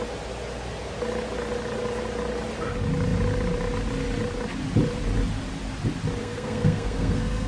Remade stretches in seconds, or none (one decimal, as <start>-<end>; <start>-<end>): 6.2-7.5